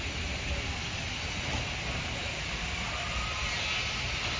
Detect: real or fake real